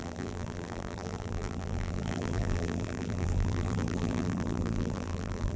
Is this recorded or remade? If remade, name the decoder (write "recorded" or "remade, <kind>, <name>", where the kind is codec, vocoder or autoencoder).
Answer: remade, vocoder, BigVGAN v2